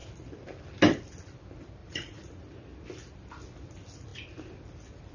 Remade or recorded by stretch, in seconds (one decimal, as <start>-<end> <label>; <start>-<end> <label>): 0.0-1.8 recorded; 1.8-2.3 remade; 2.3-5.1 recorded